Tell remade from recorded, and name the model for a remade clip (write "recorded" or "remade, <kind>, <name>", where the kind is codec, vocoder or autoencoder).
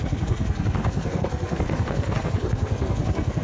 remade, codec, SNAC